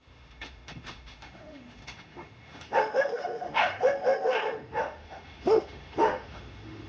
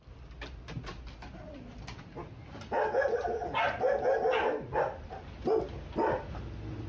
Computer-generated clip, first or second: first